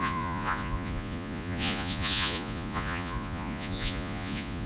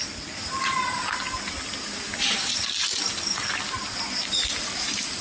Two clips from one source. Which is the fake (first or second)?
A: first